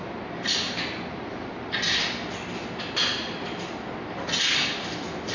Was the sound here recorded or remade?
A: recorded